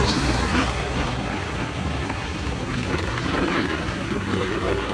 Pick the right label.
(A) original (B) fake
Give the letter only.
B